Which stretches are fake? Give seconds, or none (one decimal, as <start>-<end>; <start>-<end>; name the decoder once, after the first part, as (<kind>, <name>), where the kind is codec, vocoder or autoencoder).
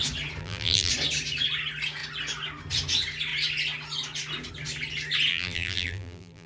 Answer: 0.4-0.9 (vocoder, BigVGAN v2); 5.3-6.5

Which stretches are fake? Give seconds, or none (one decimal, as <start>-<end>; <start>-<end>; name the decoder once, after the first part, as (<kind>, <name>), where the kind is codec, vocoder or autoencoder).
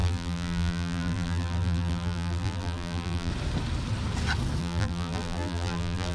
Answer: 0.0-3.3 (vocoder, BigVGAN v2); 4.6-6.1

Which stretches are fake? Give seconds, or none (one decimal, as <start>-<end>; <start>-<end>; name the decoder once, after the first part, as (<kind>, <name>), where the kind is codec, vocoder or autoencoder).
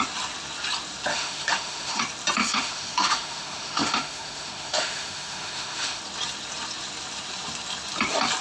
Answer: 1.1-2.0 (autoencoder, DAC-VAE); 2.4-6.0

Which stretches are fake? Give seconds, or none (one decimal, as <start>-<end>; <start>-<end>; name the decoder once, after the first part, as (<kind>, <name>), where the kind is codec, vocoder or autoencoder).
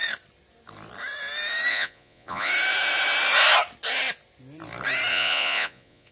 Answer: 1.7-2.5 (vocoder, Vocos); 5.1-6.1